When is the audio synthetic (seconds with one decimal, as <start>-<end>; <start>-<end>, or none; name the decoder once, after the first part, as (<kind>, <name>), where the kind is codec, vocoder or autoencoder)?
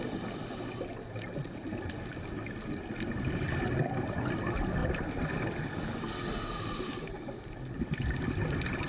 none